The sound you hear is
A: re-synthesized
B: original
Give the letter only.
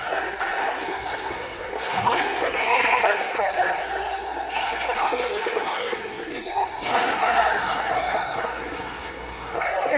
A